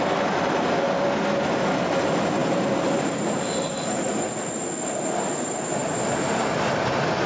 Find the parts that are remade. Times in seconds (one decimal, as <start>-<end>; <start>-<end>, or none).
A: 2.4-4.3